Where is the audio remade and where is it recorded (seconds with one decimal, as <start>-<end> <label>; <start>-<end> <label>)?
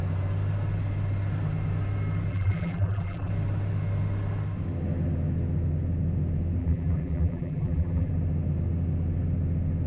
0.0-2.3 recorded; 2.3-3.3 remade; 3.3-6.6 recorded; 6.6-8.1 remade; 8.1-9.9 recorded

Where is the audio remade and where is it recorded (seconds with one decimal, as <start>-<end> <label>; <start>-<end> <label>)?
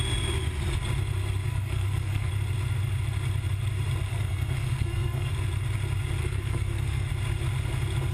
0.0-1.5 recorded; 1.5-2.3 remade; 2.3-4.1 recorded; 4.1-5.3 remade; 5.3-6.2 recorded; 6.2-7.1 remade; 7.1-8.1 recorded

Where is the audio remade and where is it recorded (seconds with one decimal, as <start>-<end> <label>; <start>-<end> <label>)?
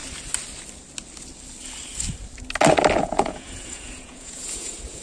0.0-3.0 recorded; 3.0-5.0 remade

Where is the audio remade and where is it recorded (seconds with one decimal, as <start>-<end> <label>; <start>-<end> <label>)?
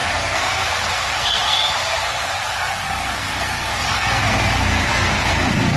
0.0-5.8 remade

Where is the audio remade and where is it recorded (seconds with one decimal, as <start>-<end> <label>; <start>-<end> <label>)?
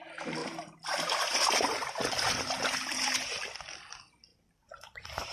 0.0-0.4 recorded; 0.4-3.4 remade; 3.4-4.3 recorded; 4.3-5.3 remade